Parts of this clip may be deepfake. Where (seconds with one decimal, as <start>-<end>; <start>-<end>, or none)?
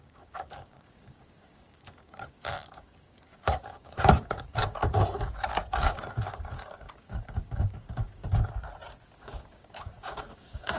0.0-8.2; 9.2-10.8